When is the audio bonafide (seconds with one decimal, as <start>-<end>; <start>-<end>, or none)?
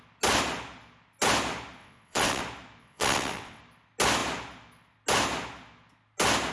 0.0-1.8; 2.4-2.8; 3.6-6.5